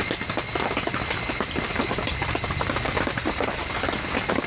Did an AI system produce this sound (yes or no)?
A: no